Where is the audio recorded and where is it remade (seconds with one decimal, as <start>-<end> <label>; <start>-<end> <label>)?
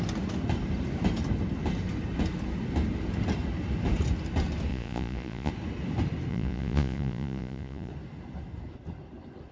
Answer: 0.0-4.7 recorded; 4.7-5.5 remade; 5.5-6.3 recorded; 6.3-7.9 remade; 7.9-9.5 recorded